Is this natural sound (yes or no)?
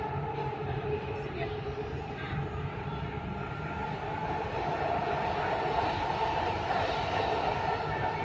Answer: no